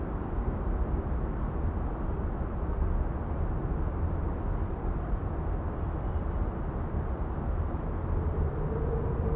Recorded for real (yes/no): yes